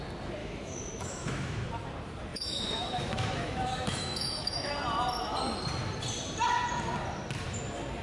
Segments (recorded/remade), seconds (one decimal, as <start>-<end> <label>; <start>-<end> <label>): 0.0-0.4 recorded; 0.4-1.7 remade; 1.7-2.3 recorded; 2.3-4.7 remade; 4.7-8.0 recorded